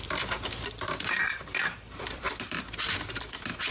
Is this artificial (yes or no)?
yes